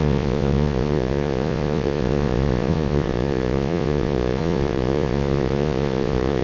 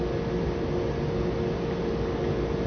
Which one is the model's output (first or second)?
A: first